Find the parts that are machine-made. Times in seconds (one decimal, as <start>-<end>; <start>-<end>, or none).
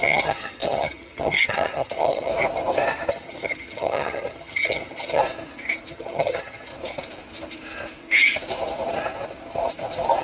0.0-2.3; 3.1-5.2; 5.9-6.7